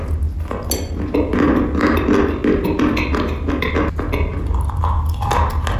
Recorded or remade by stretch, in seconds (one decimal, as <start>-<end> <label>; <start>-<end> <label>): 0.0-5.8 recorded